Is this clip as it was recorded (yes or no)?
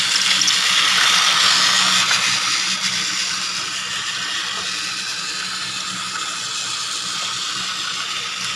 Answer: yes